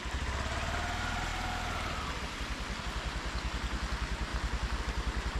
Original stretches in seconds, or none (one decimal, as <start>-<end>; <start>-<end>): 0.0-5.4